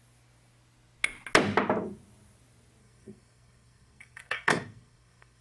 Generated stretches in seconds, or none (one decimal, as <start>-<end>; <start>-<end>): 2.8-5.4